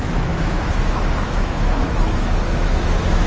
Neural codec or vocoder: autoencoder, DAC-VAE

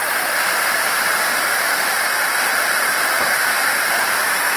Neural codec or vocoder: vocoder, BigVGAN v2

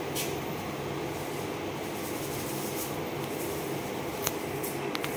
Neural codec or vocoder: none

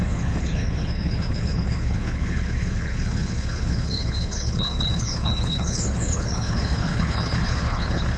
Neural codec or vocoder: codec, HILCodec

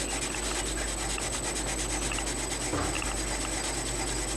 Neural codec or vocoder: none